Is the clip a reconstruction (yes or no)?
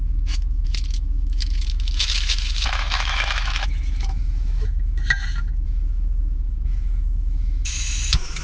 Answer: yes